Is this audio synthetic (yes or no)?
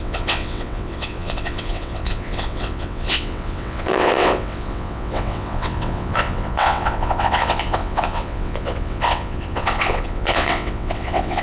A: yes